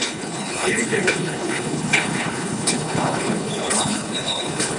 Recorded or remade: remade